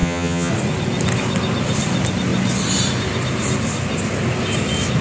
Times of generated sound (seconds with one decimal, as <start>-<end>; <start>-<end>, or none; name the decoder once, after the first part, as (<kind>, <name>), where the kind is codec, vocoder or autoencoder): 0.0-0.5 (vocoder, HiFi-GAN)